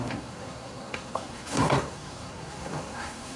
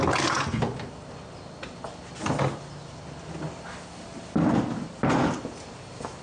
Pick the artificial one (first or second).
first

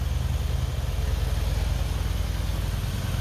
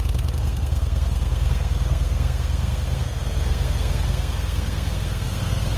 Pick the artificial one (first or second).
second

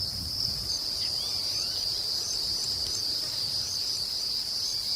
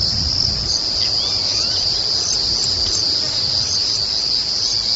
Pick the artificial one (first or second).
first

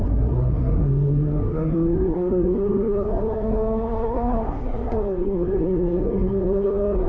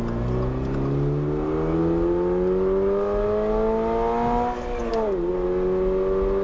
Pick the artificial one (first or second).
first